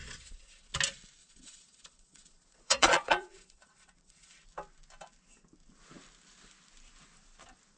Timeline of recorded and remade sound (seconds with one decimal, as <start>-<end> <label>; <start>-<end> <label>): 0.0-0.7 remade; 0.7-1.2 recorded; 1.2-4.3 remade; 4.3-7.8 recorded

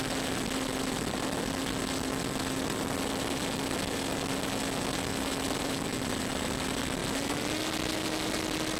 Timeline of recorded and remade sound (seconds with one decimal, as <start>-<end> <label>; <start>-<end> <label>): 0.0-8.8 recorded

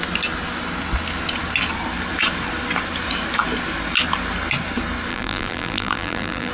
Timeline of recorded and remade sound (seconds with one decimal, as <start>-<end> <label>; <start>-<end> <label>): 0.0-5.1 recorded; 5.1-6.5 remade

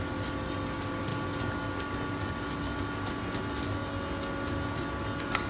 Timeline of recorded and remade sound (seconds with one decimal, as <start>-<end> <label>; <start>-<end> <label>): 0.0-5.5 recorded

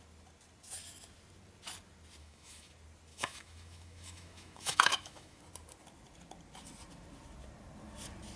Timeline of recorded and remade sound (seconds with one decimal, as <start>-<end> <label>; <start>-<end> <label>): 0.0-2.2 recorded; 2.2-2.7 remade; 2.7-3.1 recorded; 3.1-5.4 remade; 5.4-8.4 recorded